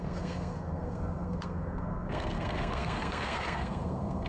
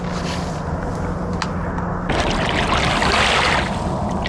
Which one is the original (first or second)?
second